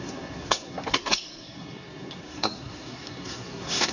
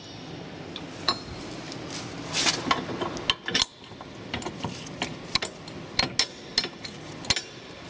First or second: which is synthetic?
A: first